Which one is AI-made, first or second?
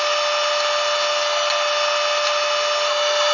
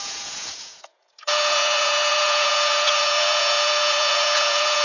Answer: second